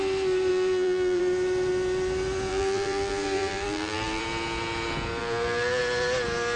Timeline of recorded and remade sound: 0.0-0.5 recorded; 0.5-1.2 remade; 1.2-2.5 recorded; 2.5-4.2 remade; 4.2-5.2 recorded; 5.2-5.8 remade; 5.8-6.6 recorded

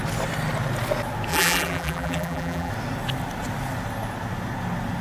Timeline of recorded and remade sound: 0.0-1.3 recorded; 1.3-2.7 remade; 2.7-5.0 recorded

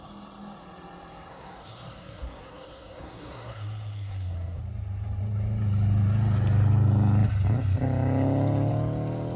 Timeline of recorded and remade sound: 0.0-1.3 recorded; 1.3-4.6 remade; 4.6-9.4 recorded

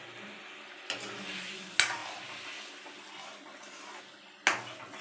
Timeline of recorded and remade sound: 0.0-5.0 recorded

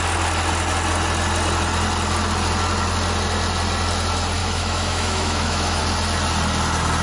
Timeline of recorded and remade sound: 0.0-4.4 recorded; 4.4-5.8 remade; 5.8-7.0 recorded